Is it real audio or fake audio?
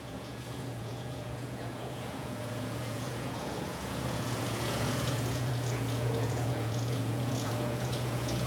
fake